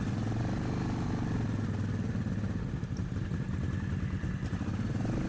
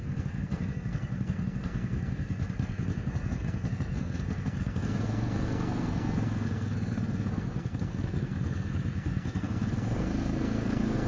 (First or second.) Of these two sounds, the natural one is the first